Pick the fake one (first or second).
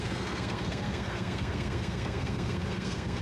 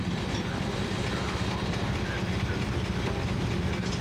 first